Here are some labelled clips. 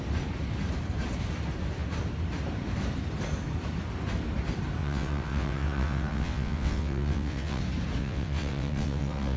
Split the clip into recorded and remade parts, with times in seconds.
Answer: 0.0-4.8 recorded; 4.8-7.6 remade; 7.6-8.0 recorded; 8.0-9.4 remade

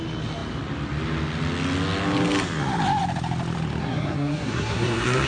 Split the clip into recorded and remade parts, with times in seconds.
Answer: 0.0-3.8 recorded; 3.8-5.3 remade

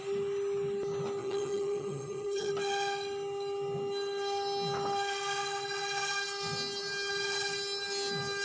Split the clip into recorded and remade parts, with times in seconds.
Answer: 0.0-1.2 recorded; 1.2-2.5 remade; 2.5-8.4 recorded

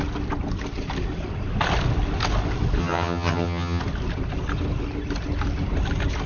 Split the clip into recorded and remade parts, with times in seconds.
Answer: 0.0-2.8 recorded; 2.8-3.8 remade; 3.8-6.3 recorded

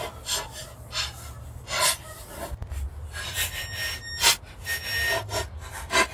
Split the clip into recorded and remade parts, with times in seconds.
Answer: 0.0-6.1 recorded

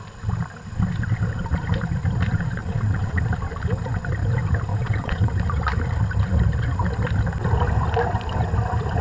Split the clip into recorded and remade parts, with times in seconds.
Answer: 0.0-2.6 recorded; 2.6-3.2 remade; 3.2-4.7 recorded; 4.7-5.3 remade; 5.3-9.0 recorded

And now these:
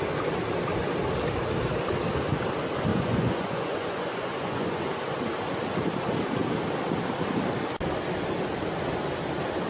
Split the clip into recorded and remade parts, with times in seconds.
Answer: 0.0-2.9 recorded; 2.9-4.9 remade; 4.9-9.7 recorded